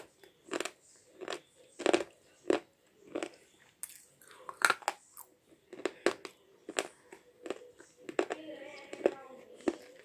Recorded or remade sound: recorded